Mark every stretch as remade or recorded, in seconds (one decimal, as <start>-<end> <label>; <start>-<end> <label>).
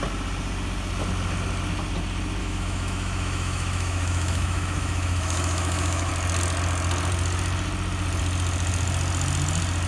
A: 0.0-2.4 recorded; 2.4-6.1 remade; 6.1-9.9 recorded